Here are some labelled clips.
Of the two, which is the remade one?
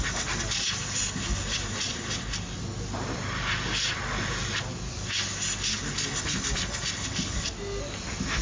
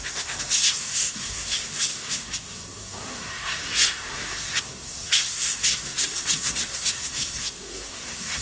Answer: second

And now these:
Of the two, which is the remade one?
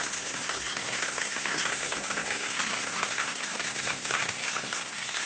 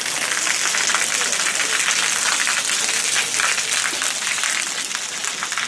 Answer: first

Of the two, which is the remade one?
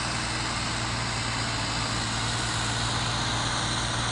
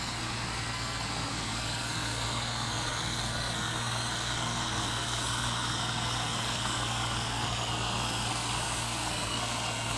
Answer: second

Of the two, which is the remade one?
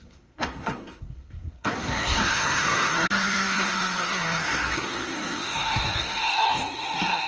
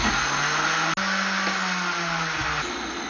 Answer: first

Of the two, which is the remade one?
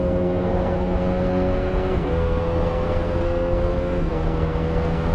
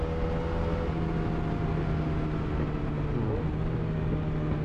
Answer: first